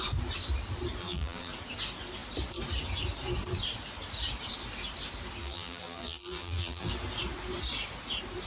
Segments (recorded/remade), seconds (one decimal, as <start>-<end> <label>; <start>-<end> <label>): 0.0-1.0 recorded; 1.0-1.5 remade; 1.5-5.4 recorded; 5.4-6.9 remade; 6.9-8.5 recorded